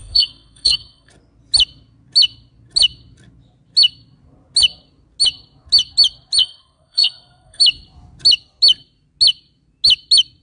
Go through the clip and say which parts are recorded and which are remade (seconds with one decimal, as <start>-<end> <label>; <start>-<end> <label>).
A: 0.0-1.1 remade; 1.1-6.4 recorded; 6.4-7.6 remade; 7.6-10.4 recorded